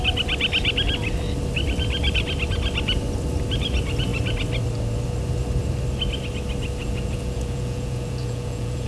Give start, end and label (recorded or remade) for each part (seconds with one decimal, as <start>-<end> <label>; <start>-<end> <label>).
0.0-6.8 recorded; 6.8-8.9 remade